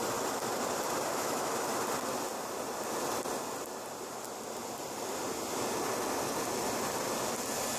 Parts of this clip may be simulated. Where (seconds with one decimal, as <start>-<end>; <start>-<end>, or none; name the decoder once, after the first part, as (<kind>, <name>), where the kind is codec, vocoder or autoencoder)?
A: 1.1-1.7 (autoencoder, DAC-VAE)